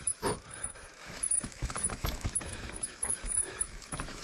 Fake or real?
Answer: fake